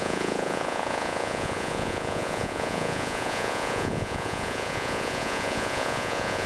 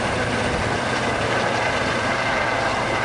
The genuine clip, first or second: second